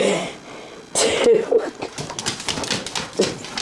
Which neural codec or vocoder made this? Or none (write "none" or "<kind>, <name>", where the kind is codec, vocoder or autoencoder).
none